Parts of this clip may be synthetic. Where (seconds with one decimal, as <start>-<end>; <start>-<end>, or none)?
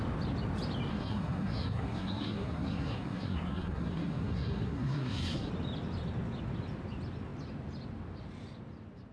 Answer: 0.9-5.5